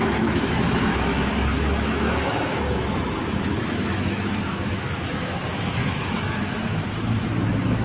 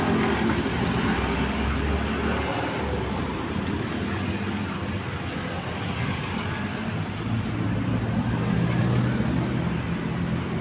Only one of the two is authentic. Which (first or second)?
second